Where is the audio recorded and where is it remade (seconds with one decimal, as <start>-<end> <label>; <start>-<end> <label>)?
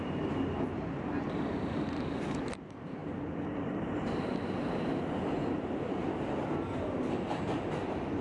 0.0-6.0 remade; 6.0-7.3 recorded; 7.3-8.2 remade